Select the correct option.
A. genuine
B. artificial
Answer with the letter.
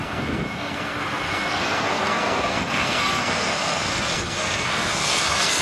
B